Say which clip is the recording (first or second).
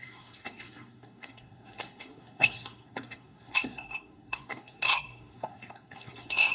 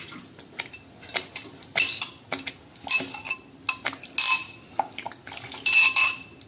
second